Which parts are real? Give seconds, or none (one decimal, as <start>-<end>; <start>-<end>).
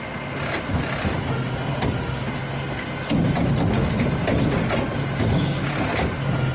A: 0.0-6.5